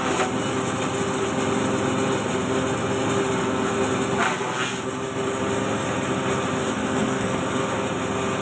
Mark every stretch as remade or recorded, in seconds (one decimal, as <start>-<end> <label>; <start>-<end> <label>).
0.0-6.8 recorded; 6.8-7.4 remade; 7.4-8.4 recorded